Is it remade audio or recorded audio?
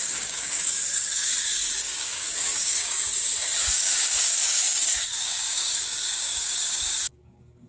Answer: remade